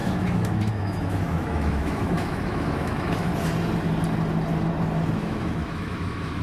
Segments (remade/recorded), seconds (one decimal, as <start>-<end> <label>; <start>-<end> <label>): 0.0-3.3 remade; 3.3-5.2 recorded; 5.2-6.4 remade